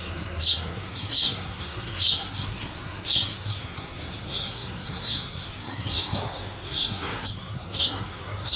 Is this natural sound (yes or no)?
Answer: no